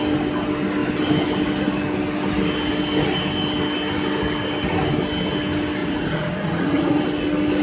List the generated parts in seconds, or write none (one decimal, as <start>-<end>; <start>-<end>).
5.8-7.0